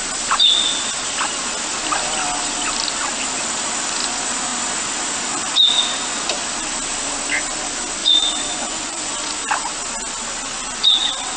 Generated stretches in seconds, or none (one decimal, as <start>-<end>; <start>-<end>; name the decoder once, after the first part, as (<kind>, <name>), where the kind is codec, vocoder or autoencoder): 8.0-9.3 (vocoder, Vocos)